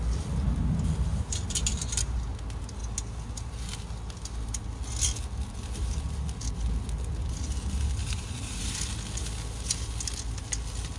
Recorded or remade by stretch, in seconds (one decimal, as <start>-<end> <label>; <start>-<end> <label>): 0.0-1.1 recorded; 1.1-2.2 remade; 2.2-8.0 recorded; 8.0-8.7 remade; 8.7-11.0 recorded